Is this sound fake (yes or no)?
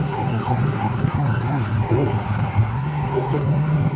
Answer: yes